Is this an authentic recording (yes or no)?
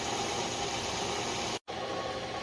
yes